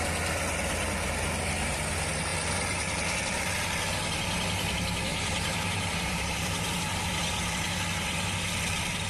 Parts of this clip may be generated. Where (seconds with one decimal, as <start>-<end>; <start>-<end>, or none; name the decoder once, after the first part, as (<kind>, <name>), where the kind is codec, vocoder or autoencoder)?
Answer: 5.1-6.8 (vocoder, BigVGAN v2)